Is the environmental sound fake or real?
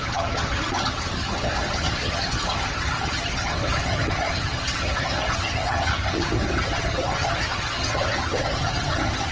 fake